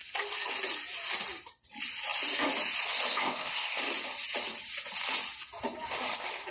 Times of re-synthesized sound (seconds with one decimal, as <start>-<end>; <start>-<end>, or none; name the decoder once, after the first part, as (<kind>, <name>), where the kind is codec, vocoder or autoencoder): 3.1-3.8 (codec, ZipCodec)